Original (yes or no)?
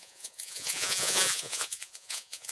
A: no